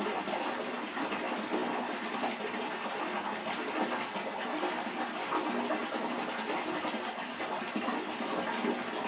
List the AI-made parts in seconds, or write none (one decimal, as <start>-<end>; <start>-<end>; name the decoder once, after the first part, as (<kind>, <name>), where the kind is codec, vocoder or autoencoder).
none